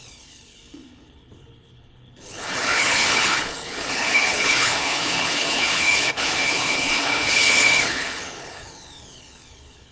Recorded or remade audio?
remade